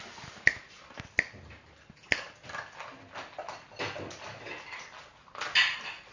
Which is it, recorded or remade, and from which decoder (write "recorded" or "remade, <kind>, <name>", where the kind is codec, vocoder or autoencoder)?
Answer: recorded